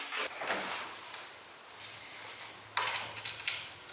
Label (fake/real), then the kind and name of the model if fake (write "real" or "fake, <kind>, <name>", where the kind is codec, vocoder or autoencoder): real